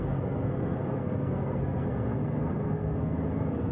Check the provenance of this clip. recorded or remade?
remade